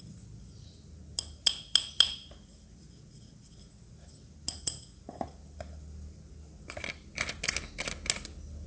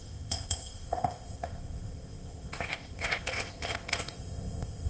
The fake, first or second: second